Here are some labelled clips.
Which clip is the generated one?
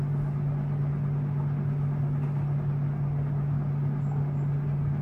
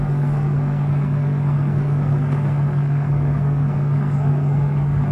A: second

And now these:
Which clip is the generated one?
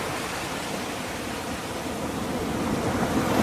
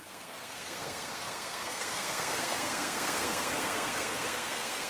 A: second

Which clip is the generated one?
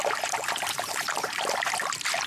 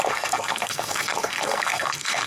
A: second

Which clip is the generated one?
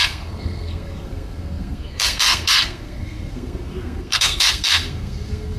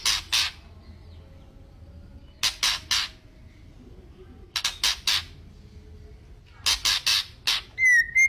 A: first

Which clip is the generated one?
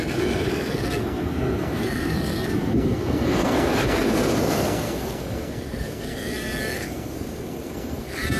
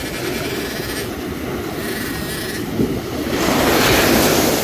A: first